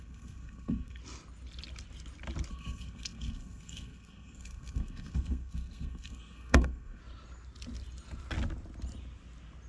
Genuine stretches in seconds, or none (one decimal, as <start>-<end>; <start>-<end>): 1.0-2.5; 7.0-9.7